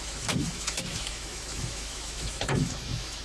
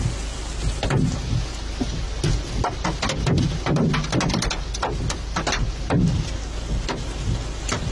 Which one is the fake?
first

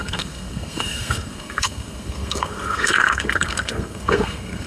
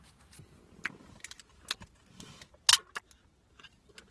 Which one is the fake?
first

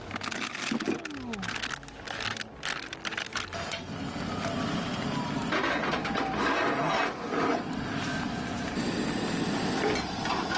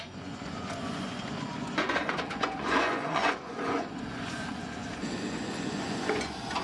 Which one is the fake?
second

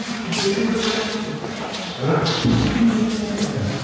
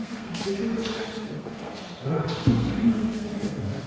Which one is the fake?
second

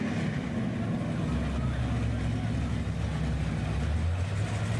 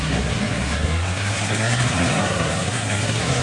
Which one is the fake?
second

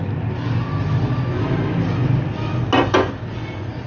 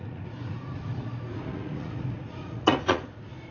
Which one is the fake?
second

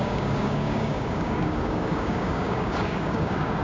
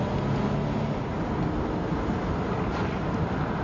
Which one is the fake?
first